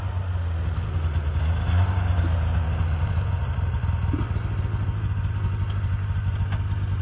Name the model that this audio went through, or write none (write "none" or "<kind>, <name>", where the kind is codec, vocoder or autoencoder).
none